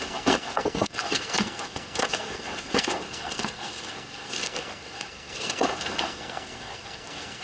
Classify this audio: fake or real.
fake